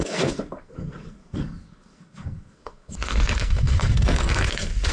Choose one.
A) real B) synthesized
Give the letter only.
B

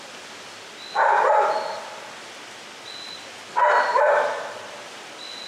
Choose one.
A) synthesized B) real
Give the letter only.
B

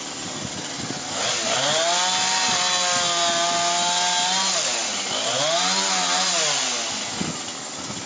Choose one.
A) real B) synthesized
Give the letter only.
A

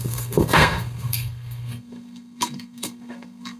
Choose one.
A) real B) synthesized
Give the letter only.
B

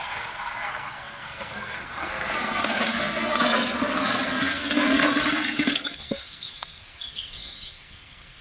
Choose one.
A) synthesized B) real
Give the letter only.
A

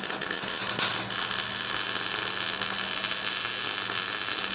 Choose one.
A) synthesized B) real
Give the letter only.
B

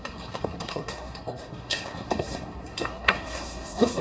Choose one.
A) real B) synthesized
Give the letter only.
B